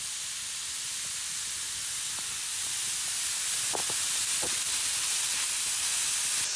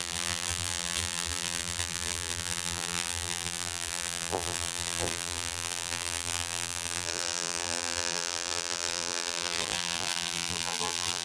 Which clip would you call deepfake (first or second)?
second